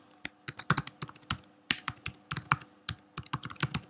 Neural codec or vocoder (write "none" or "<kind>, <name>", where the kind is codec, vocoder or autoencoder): none